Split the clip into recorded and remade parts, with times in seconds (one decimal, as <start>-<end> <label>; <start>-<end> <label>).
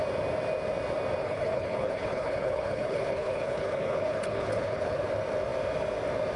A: 0.0-1.2 recorded; 1.2-5.0 remade; 5.0-6.4 recorded